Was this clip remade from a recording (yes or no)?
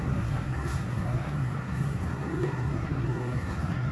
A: yes